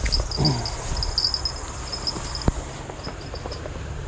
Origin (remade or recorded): recorded